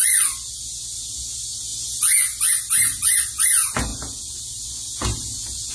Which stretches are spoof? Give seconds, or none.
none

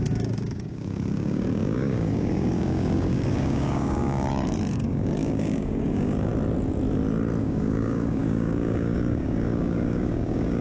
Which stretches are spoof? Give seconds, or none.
0.0-6.3 (codec, DAC); 7.4-10.6

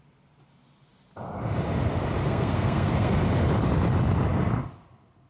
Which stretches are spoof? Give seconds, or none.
2.2-3.2 (codec, SNAC)

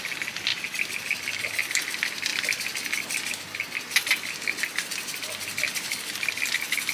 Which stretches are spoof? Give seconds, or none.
none

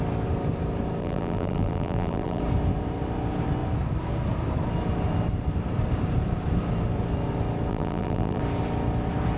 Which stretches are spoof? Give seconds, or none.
1.0-2.4 (vocoder, BigVGAN v2); 7.7-8.4

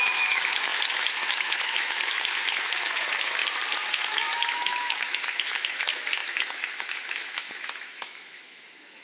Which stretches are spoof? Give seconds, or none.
0.0-3.4 (autoencoder, DAC-VAE); 3.9-9.0

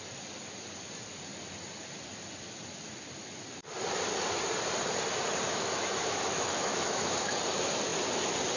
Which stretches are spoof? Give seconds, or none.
5.5-7.1 (autoencoder, DAC-VAE)